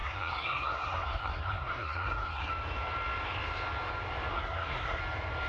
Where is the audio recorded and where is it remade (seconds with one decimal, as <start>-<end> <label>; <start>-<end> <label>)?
0.0-2.5 remade; 2.5-4.3 recorded; 4.3-5.0 remade; 5.0-5.5 recorded